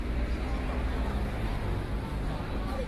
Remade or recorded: recorded